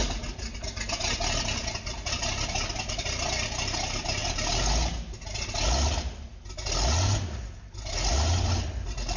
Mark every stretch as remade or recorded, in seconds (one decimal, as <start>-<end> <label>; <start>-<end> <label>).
0.0-9.2 recorded